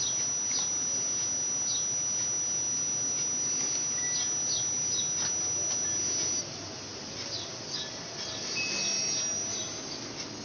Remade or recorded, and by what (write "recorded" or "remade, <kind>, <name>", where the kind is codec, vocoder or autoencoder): recorded